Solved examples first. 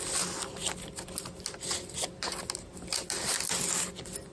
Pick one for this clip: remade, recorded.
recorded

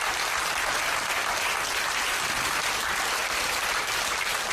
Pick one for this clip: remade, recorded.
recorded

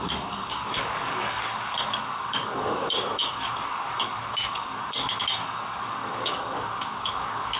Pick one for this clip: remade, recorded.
remade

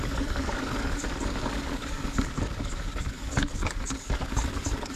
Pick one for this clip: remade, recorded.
remade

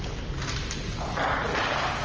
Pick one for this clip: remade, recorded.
recorded